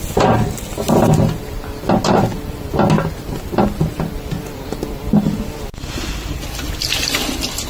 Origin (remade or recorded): recorded